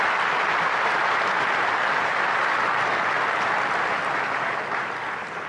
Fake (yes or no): no